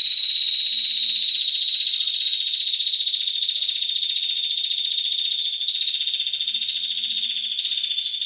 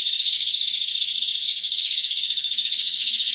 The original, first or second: first